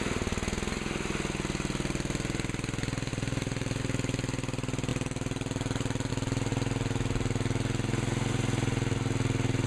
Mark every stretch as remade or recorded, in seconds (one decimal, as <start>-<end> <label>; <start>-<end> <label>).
0.0-3.1 recorded; 3.1-3.8 remade; 3.8-4.9 recorded; 4.9-6.1 remade; 6.1-9.7 recorded